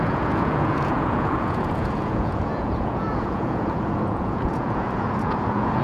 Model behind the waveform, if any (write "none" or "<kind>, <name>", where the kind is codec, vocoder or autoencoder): vocoder, Vocos